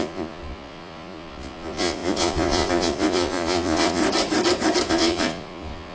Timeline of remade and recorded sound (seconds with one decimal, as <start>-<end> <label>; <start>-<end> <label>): 0.0-4.0 remade; 4.0-4.9 recorded; 4.9-5.9 remade